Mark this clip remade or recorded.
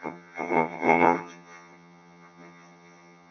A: remade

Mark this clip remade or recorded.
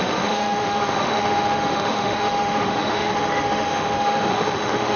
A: remade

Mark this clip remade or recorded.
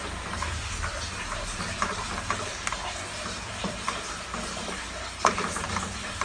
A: remade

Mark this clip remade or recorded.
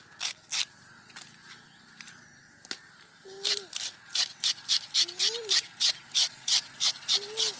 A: recorded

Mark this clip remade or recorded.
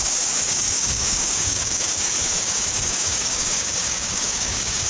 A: remade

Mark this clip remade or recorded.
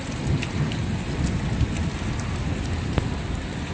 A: recorded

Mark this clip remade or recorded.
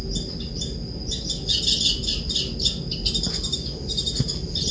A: recorded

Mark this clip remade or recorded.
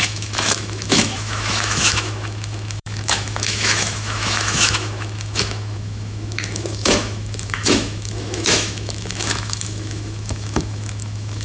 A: remade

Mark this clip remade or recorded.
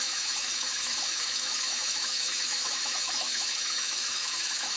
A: remade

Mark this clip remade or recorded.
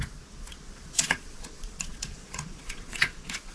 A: remade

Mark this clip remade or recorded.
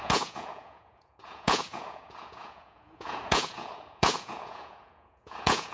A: remade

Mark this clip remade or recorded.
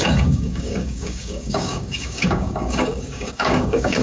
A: remade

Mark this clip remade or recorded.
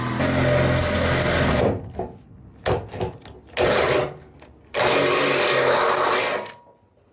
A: recorded